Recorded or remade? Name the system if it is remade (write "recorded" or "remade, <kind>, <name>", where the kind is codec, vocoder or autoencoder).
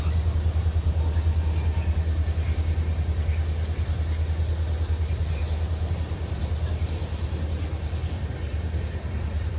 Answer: recorded